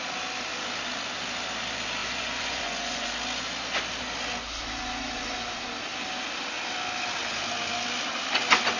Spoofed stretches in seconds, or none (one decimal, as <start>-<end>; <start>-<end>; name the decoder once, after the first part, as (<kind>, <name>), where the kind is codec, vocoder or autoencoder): 2.0-3.1 (vocoder, Vocos)